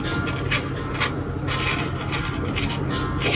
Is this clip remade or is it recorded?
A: recorded